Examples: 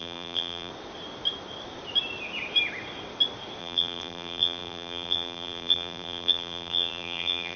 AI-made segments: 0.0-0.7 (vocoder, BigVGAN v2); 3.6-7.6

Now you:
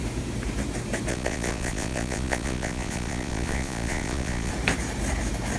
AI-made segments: 1.1-4.5 (vocoder, Vocos)

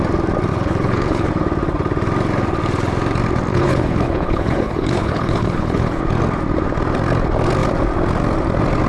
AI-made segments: 0.5-1.3 (codec, HILCodec); 3.5-6.0

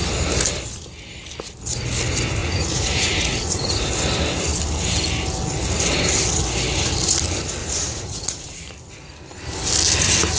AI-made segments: 2.4-3.9 (vocoder, Vocos); 7.6-8.7